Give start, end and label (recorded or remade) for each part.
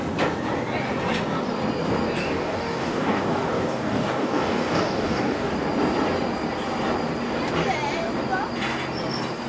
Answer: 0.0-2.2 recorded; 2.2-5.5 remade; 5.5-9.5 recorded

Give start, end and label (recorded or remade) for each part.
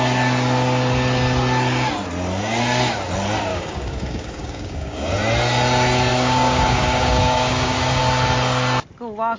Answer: 0.0-3.5 recorded; 3.5-5.1 remade; 5.1-6.1 recorded; 6.1-8.0 remade; 8.0-9.4 recorded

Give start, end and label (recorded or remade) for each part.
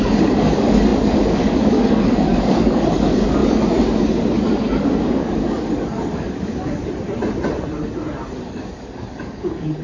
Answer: 0.0-6.8 remade; 6.8-8.4 recorded; 8.4-9.8 remade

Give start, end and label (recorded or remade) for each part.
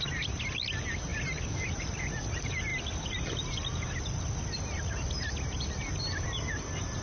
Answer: 0.0-7.0 recorded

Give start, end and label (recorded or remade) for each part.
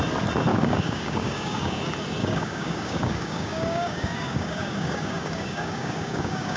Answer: 0.0-0.5 recorded; 0.5-1.8 remade; 1.8-2.2 recorded; 2.2-6.6 remade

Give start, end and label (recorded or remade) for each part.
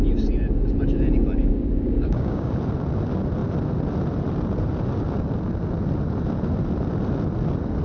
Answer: 0.0-1.4 recorded; 1.4-2.5 remade; 2.5-7.8 recorded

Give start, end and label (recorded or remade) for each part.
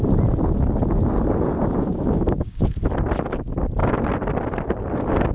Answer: 0.0-1.9 recorded; 1.9-2.8 remade; 2.8-5.3 recorded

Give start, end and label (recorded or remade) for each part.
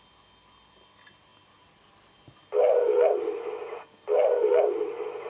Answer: 0.0-5.3 recorded